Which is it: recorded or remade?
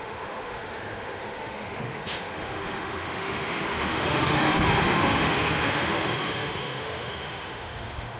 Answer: remade